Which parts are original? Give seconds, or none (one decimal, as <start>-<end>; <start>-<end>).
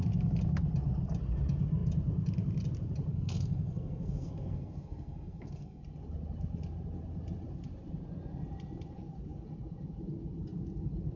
0.0-3.1; 5.8-11.2